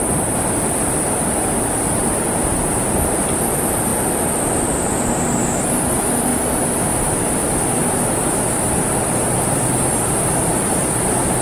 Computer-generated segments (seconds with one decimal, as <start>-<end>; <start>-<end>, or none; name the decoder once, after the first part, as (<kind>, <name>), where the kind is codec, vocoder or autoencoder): 0.0-3.9 (vocoder, BigVGAN v2); 5.4-6.3; 7.0-7.4; 8.9-9.3; 10.0-11.4